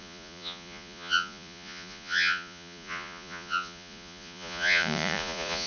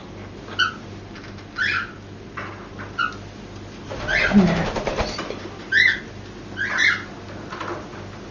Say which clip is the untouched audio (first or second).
second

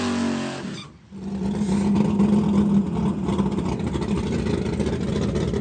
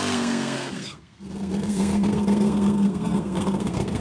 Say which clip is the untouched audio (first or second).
first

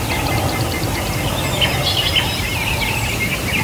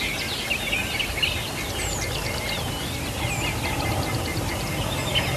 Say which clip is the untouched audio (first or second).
first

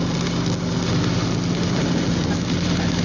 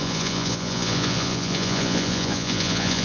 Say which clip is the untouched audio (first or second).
first